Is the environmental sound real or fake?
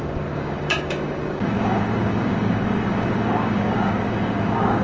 fake